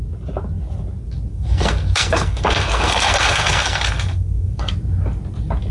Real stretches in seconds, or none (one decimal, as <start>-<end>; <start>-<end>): 0.0-1.3; 4.7-5.7